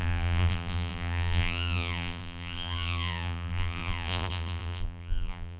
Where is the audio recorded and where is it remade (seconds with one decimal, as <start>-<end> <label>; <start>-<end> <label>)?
0.0-5.6 remade